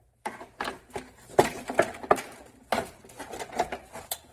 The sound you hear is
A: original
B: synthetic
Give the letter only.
B